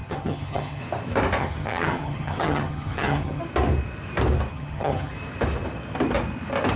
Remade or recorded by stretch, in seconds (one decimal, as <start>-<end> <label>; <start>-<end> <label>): 0.0-0.8 remade; 0.8-1.4 recorded; 1.4-3.4 remade; 3.4-4.5 recorded; 4.5-5.1 remade; 5.1-6.8 recorded